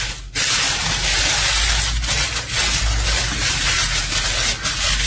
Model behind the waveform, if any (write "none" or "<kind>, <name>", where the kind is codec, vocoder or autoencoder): none